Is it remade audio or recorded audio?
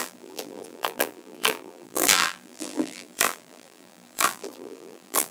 remade